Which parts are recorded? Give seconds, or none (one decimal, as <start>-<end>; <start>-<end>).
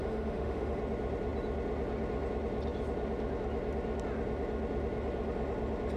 0.8-6.0